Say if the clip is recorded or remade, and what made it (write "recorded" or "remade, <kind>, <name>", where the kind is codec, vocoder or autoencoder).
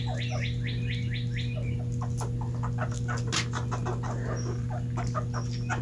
recorded